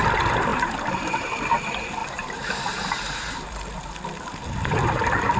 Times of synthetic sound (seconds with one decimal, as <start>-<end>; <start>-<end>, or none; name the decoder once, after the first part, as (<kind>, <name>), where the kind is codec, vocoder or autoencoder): 0.5-1.6 (vocoder, BigVGAN v2); 2.0-3.4